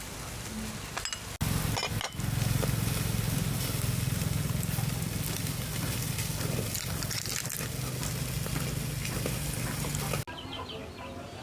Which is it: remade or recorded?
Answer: recorded